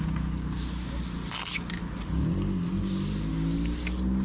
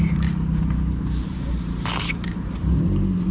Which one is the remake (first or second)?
second